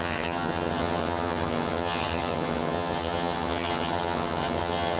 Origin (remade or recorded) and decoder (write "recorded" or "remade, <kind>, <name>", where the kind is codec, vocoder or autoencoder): remade, vocoder, HiFi-GAN